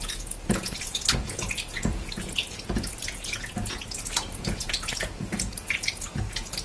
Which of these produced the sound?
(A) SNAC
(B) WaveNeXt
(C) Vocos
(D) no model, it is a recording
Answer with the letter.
C